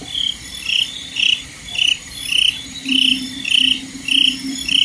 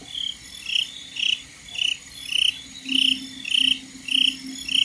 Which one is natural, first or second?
second